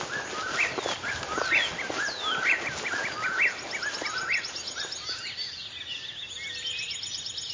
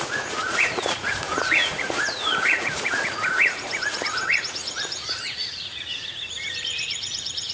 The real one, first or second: first